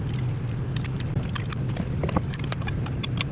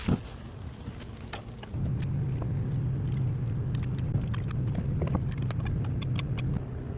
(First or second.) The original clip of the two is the second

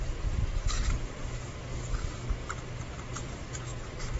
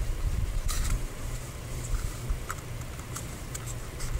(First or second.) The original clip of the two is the first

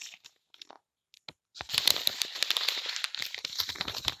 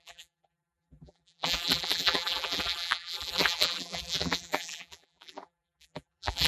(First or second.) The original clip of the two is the first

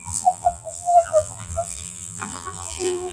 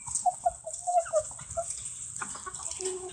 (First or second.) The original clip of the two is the second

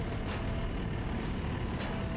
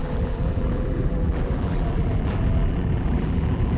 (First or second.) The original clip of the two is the first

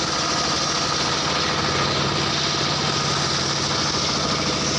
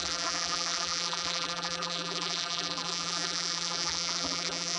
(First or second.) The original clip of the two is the first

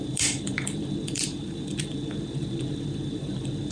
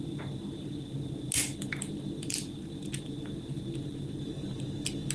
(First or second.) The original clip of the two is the second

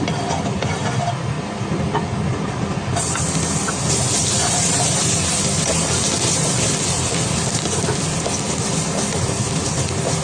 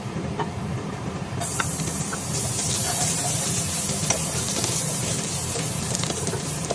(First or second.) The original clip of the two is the first